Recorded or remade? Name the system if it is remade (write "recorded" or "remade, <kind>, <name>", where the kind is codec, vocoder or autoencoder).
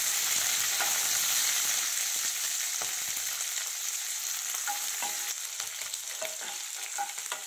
remade, vocoder, BigVGAN v2